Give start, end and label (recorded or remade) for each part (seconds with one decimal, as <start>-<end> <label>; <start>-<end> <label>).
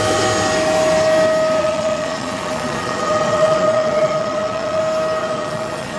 0.0-1.6 recorded; 1.6-4.8 remade; 4.8-5.2 recorded; 5.2-6.0 remade